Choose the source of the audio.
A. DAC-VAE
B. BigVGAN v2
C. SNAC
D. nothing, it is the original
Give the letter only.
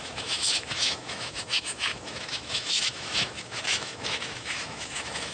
A